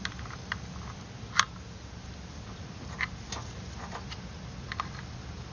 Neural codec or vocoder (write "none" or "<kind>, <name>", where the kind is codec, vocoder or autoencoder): none